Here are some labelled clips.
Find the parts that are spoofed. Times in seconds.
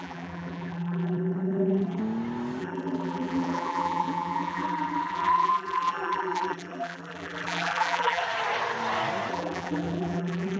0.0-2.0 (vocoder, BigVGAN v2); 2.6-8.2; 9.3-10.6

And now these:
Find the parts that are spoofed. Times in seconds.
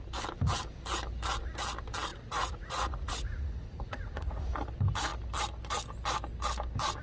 2.1-4.5 (vocoder, Vocos)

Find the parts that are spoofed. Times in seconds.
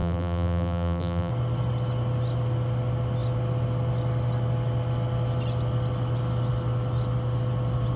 0.0-1.3 (vocoder, BigVGAN v2)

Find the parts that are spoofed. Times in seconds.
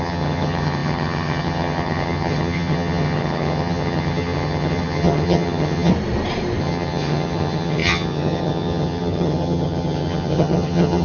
0.0-5.9 (vocoder, HiFi-GAN); 6.6-11.0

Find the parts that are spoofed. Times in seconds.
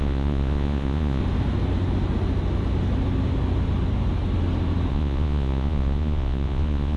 0.0-1.2 (vocoder, Vocos); 4.9-7.0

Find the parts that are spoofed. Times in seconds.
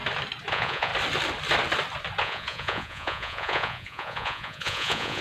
0.5-0.9 (vocoder, Vocos); 2.2-5.2